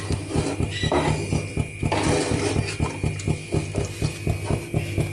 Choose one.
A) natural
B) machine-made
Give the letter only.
A